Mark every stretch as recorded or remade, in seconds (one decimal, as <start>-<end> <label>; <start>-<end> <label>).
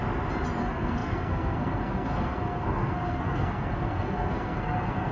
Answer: 0.0-0.6 recorded; 0.6-5.1 remade